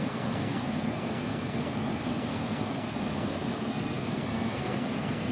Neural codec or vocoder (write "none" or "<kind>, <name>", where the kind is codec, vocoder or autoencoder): codec, SNAC